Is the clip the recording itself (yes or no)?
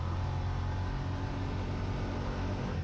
yes